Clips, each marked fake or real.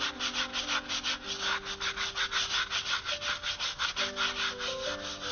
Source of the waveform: real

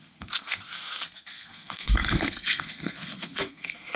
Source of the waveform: fake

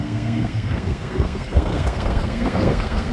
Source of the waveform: fake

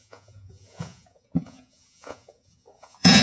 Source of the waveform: fake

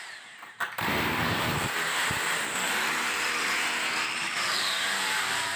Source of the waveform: fake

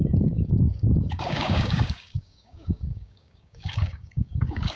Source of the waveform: fake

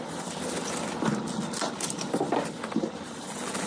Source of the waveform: real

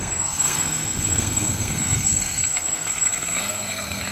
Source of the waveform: fake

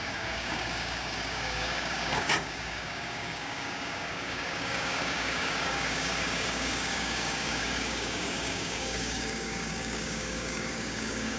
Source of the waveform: fake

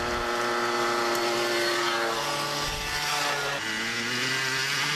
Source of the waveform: real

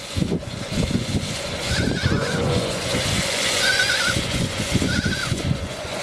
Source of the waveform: fake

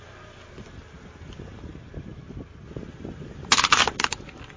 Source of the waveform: real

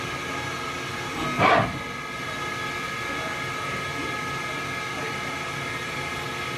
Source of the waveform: real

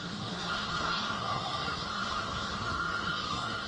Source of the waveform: fake